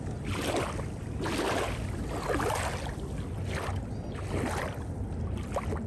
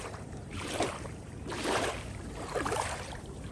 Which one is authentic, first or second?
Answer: first